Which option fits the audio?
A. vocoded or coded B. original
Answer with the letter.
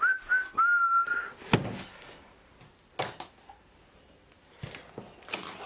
B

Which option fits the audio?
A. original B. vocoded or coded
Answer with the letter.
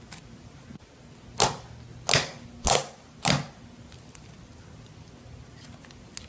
A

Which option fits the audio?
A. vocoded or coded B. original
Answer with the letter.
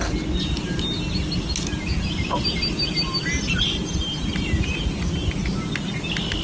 B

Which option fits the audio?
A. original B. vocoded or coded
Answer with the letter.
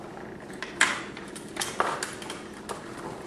A